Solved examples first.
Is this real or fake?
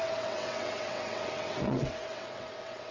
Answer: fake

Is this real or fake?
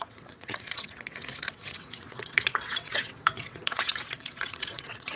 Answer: fake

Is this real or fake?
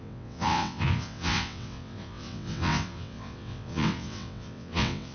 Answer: fake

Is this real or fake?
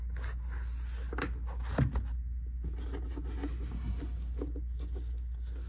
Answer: real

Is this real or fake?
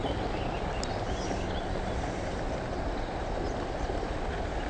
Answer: real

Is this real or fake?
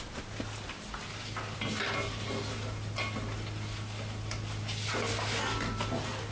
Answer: real